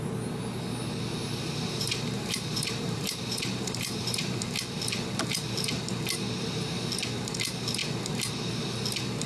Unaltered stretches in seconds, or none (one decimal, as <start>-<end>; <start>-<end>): 0.0-1.2; 4.4-9.3